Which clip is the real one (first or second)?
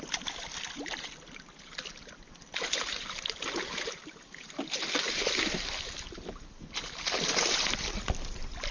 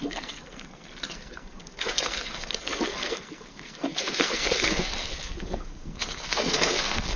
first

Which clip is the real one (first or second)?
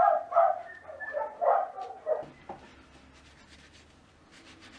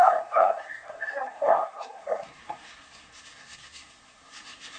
first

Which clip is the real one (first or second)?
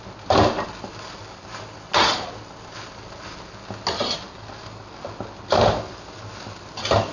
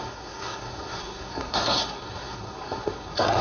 first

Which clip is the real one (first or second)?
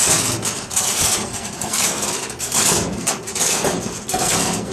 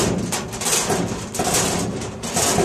second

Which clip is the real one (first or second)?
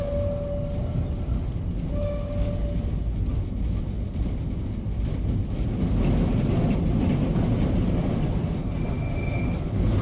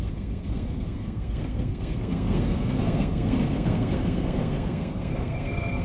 first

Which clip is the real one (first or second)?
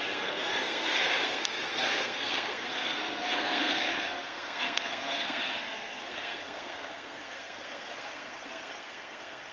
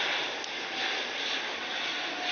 second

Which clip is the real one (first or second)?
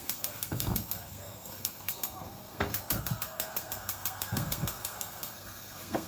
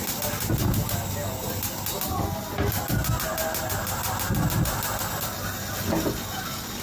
second